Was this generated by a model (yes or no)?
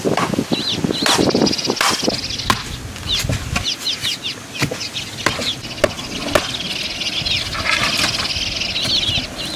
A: no